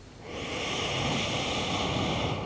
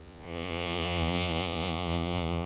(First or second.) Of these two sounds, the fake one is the second